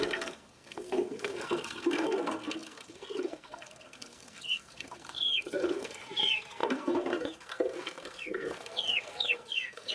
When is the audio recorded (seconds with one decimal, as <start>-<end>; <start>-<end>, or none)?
none